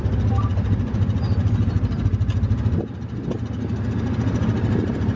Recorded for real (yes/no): yes